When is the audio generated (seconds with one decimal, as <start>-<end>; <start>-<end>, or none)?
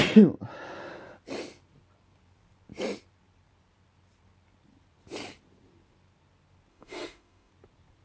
6.7-7.5